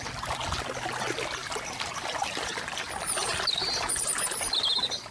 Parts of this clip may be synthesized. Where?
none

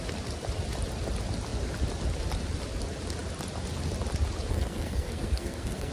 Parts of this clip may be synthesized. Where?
4.5-5.9 (codec, SNAC)

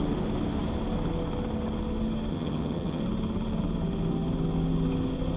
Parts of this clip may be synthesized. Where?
2.3-3.0 (vocoder, HiFi-GAN)

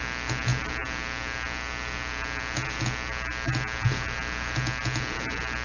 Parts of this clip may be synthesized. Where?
none

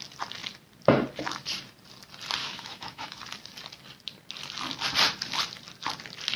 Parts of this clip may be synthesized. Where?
2.4-3.2 (autoencoder, DAC-VAE)

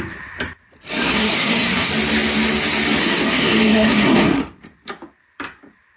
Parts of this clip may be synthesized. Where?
0.9-1.9 (codec, SNAC); 3.0-4.4